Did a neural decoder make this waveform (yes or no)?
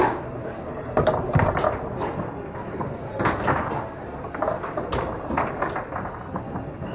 no